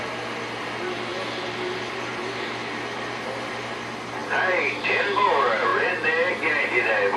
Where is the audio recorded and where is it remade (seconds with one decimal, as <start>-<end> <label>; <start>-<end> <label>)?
0.0-7.2 recorded